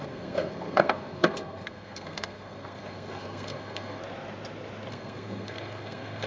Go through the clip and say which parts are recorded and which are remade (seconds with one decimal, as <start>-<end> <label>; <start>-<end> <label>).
0.0-4.0 remade; 4.0-4.9 recorded; 4.9-6.3 remade